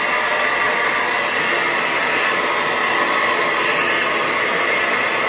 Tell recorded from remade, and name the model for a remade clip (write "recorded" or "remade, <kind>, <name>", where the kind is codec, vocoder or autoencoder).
recorded